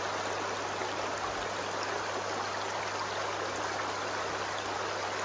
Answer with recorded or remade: recorded